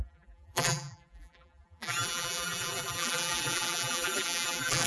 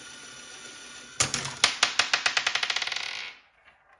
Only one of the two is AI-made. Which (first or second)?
first